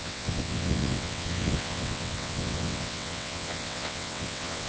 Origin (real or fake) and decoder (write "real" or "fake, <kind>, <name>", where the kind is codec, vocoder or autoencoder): fake, vocoder, WaveNeXt